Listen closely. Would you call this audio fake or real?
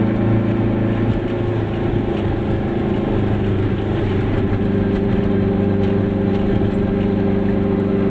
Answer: real